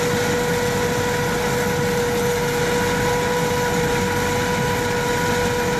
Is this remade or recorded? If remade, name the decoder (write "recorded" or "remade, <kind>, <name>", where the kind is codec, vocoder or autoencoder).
recorded